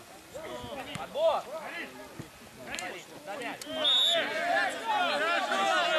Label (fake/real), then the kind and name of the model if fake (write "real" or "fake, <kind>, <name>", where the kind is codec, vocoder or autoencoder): real